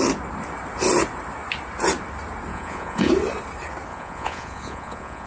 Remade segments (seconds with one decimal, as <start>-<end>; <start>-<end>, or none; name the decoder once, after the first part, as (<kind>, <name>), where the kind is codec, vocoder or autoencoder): 2.5-3.1 (vocoder, Vocos); 3.9-5.3